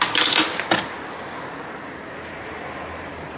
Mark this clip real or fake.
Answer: real